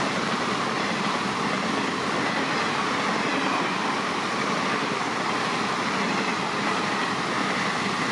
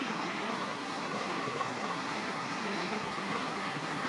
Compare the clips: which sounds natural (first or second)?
first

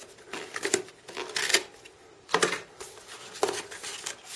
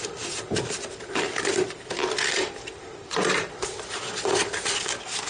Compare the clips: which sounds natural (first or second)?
first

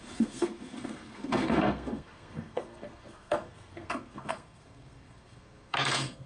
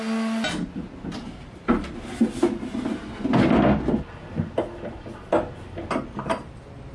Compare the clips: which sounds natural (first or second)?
second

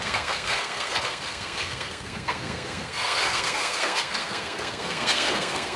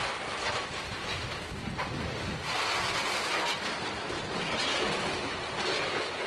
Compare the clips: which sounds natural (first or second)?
second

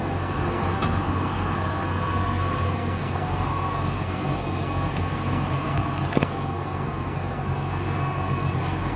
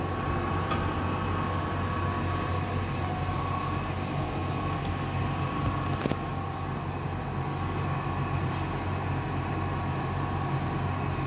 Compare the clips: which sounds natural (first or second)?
second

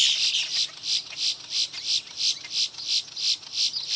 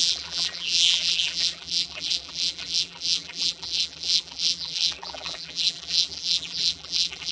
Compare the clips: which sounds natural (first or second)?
first